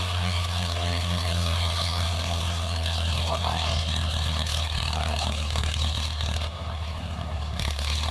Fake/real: fake